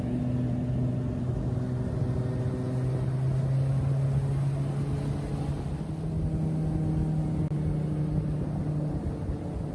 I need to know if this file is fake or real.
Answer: real